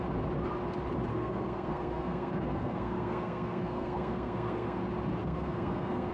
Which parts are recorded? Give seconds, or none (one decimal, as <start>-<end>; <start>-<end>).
0.0-1.1; 4.8-5.2